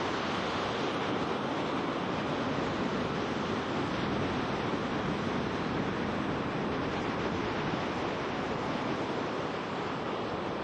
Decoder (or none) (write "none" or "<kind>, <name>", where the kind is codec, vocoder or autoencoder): none